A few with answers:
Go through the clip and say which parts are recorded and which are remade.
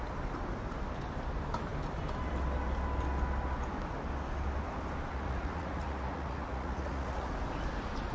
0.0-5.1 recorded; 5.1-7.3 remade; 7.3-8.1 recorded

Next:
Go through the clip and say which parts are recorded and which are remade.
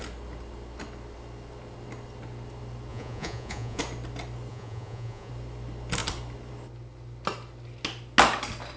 0.0-2.9 recorded; 2.9-3.8 remade; 3.8-4.5 recorded; 4.5-5.3 remade; 5.3-8.8 recorded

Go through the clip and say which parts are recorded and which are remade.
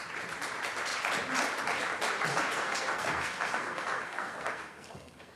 0.0-2.3 recorded; 2.3-5.4 remade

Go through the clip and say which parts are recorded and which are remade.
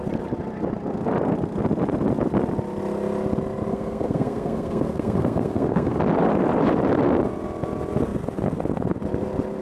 0.0-3.7 recorded; 3.7-5.9 remade; 5.9-9.6 recorded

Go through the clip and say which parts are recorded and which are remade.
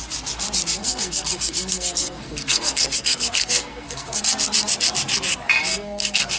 0.0-0.8 recorded; 0.8-4.2 remade; 4.2-5.7 recorded; 5.7-6.4 remade